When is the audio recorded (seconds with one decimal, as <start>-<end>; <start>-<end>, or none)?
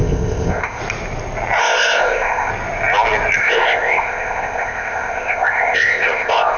0.8-1.6; 2.5-3.4